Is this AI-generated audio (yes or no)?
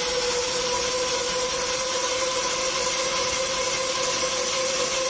no